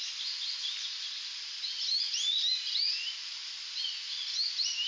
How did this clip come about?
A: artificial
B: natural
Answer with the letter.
B